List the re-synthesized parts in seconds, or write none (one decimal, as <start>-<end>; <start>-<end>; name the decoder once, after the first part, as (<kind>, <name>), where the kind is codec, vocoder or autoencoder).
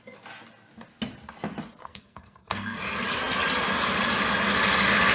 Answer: 1.8-2.8 (codec, SNAC)